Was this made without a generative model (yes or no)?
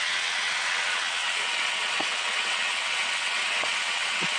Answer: no